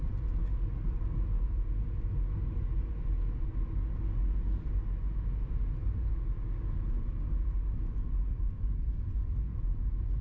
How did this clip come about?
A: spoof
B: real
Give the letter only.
B